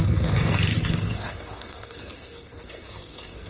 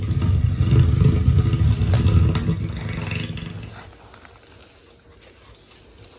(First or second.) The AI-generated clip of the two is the first